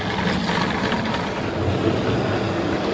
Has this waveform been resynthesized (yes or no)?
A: no